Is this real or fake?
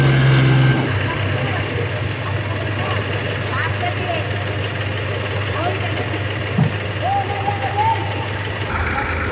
real